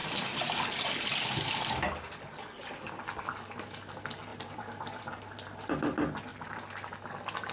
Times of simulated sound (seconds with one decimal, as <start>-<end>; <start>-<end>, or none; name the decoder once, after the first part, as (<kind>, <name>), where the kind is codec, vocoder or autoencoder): 4.3-5.7 (vocoder, BigVGAN v2); 6.3-6.9